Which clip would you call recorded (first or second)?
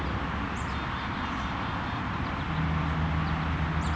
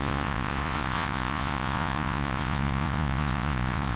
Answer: first